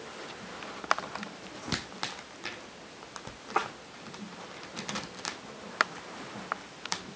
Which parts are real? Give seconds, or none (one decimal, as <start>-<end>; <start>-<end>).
0.0-7.2